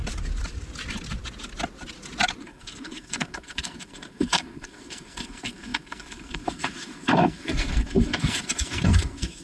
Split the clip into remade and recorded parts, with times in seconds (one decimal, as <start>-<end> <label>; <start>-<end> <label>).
0.0-2.4 recorded; 2.4-9.4 remade